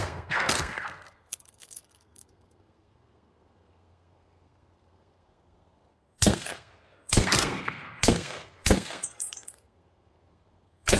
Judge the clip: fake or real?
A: fake